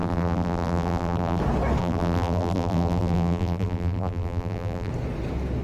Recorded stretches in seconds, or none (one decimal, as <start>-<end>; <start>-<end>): 1.4-1.8; 4.9-5.6